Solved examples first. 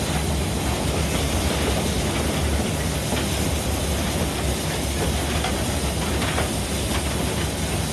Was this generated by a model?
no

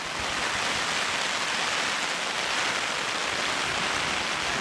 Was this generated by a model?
no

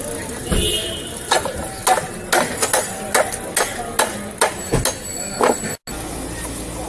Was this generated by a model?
no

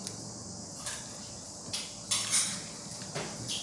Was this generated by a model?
no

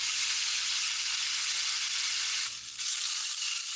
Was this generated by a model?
no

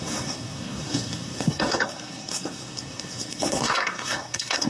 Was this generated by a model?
yes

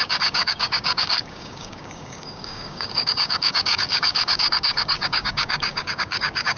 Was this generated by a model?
yes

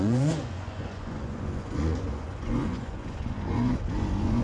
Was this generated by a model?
yes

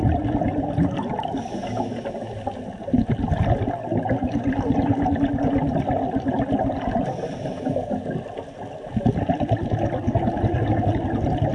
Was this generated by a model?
no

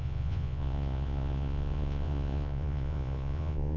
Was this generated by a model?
yes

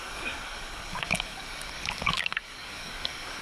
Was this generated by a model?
yes